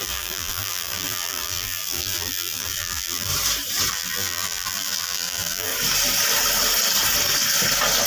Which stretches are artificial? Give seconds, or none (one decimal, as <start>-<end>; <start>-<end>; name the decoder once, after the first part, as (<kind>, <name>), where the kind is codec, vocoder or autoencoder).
0.0-3.3 (vocoder, BigVGAN v2); 3.9-5.7